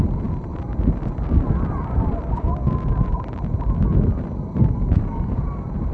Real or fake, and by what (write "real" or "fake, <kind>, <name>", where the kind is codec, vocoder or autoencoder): real